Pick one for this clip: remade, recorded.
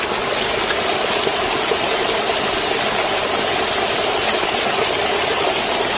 recorded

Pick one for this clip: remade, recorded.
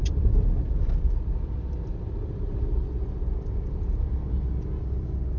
recorded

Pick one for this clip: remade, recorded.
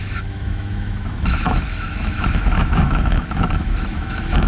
remade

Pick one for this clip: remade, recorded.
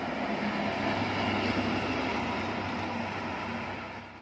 recorded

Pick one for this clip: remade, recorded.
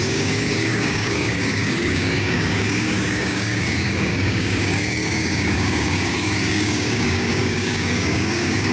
remade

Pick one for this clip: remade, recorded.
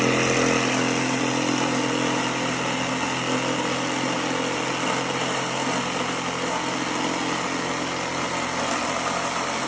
recorded